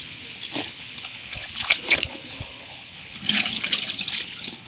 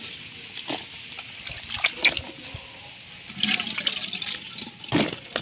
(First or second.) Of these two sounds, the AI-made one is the first